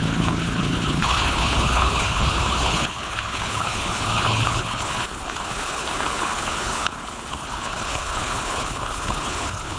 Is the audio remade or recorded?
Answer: remade